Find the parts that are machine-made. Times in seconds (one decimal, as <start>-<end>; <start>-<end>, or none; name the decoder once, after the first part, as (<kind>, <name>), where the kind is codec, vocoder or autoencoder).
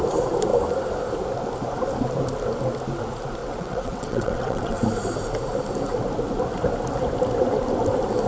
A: 3.4-4.8 (vocoder, WaveNeXt)